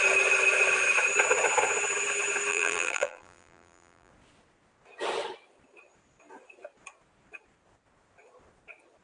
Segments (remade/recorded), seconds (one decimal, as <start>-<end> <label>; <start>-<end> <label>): 0.0-2.5 recorded; 2.5-4.1 remade; 4.1-9.0 recorded